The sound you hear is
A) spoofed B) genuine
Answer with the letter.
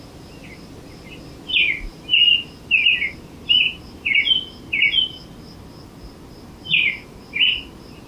B